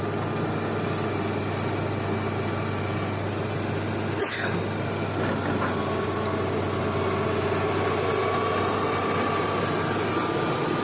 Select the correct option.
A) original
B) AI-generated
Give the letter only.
A